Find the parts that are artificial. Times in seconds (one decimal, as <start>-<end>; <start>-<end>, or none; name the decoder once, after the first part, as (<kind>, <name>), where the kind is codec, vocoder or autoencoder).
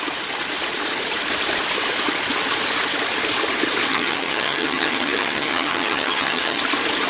3.9-6.6 (vocoder, HiFi-GAN)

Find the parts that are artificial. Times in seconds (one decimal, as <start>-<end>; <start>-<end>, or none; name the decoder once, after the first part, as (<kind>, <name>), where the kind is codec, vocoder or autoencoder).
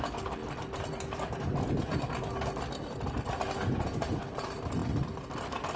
none